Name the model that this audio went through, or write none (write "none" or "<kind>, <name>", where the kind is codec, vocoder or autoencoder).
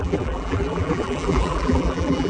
vocoder, BigVGAN v2